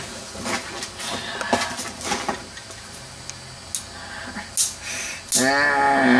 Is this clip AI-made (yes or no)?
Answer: no